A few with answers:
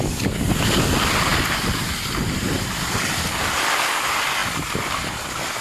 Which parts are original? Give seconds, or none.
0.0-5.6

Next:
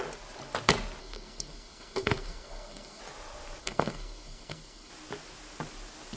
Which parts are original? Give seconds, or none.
0.0-1.0; 3.0-3.6; 4.9-6.2

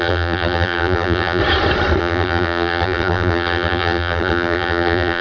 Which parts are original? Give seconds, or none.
1.4-2.0

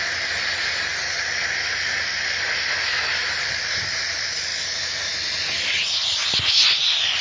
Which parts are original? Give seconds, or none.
0.0-7.2

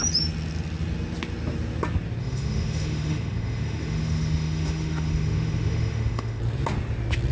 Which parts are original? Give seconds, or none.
0.0-2.2; 6.4-7.3

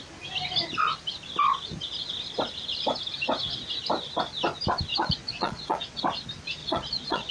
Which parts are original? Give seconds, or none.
0.0-4.9; 6.0-6.6

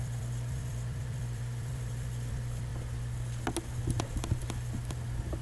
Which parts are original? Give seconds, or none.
2.7-4.0